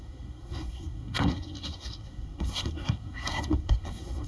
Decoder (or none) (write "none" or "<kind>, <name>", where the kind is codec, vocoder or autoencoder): codec, SNAC